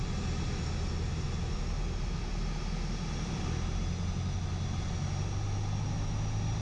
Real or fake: real